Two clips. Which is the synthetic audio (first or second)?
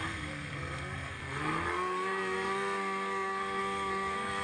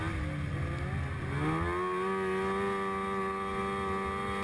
first